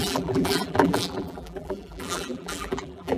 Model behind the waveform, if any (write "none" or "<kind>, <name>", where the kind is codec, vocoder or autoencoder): vocoder, BigVGAN v2